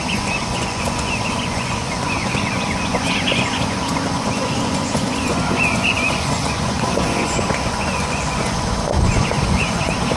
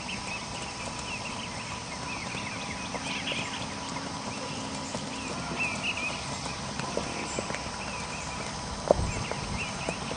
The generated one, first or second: first